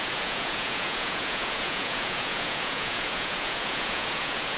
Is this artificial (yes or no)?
yes